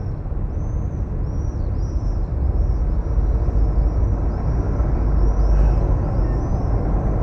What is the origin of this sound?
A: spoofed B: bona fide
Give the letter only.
B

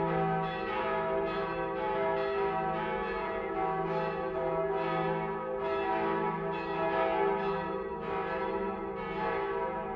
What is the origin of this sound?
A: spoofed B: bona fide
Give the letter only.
B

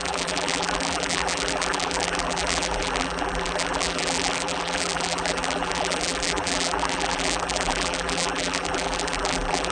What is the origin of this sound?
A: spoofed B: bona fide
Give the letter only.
A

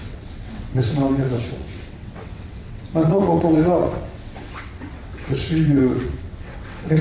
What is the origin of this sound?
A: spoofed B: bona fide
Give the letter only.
A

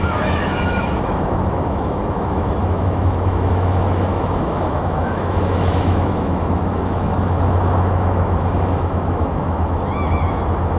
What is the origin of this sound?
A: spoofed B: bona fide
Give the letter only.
A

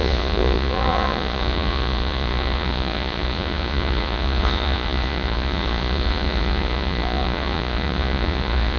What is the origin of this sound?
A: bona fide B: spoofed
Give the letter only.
B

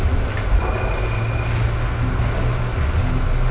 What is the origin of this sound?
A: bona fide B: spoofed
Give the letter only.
A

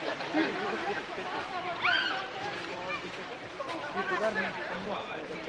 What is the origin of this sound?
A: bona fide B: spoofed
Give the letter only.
B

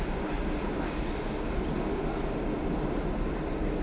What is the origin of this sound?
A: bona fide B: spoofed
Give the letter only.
A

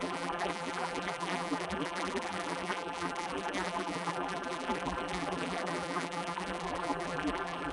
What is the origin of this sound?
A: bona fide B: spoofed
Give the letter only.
B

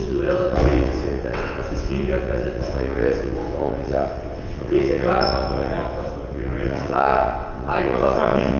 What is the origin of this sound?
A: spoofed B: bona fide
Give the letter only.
A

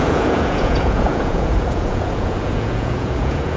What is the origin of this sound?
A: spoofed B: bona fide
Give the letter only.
A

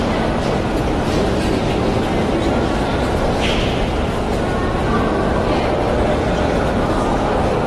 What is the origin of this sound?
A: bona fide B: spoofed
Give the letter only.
A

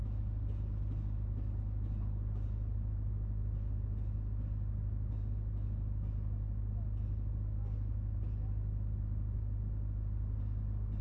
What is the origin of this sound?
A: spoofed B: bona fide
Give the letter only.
B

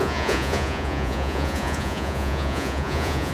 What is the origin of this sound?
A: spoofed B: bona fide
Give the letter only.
A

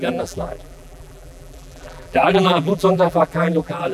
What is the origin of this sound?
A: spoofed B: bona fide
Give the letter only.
A